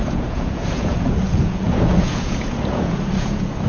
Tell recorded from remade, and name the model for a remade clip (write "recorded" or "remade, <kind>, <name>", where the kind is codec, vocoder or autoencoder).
remade, vocoder, Vocos